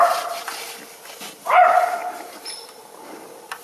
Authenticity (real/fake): real